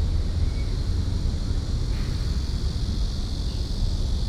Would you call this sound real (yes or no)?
yes